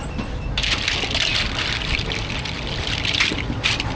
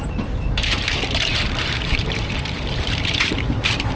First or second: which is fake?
second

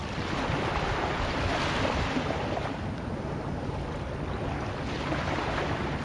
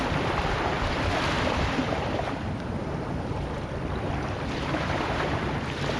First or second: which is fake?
second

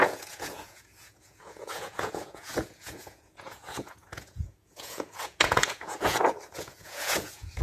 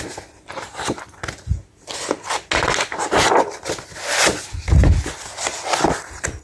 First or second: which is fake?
first